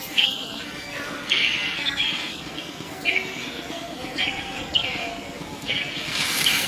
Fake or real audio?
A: fake